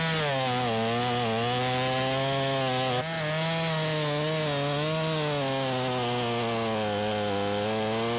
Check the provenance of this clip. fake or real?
real